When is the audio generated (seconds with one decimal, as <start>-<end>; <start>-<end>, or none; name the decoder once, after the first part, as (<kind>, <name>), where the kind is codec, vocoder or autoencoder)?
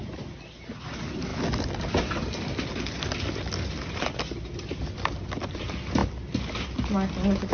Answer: 0.0-6.0 (vocoder, BigVGAN v2)